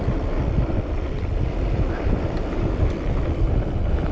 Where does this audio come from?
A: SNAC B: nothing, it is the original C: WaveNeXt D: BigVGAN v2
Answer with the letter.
D